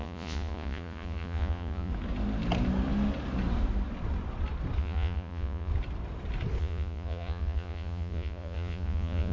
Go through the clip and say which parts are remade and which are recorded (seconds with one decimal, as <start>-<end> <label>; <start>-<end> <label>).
0.0-1.9 remade; 1.9-4.8 recorded; 4.8-5.7 remade; 5.7-6.6 recorded; 6.6-9.3 remade